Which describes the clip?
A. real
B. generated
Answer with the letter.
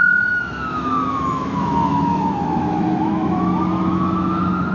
B